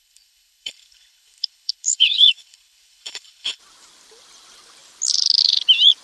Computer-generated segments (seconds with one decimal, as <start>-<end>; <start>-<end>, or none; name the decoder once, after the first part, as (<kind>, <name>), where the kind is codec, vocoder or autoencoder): 0.0-3.6 (codec, HILCodec)